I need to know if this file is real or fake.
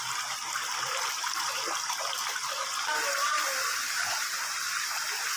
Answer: real